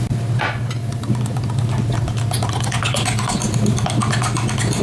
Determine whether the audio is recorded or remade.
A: recorded